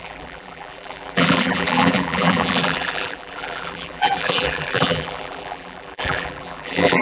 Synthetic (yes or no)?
yes